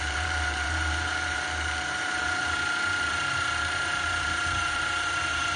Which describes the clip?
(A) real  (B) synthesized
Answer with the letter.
B